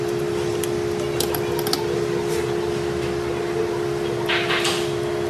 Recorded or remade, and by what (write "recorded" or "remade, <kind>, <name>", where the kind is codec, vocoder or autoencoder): recorded